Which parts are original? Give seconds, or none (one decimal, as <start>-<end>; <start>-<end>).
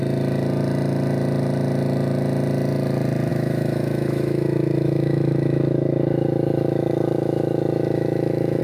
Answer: 0.0-3.3